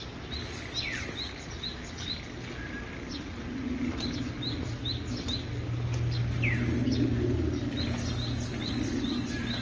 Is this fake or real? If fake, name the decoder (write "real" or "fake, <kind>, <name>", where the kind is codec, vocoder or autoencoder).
real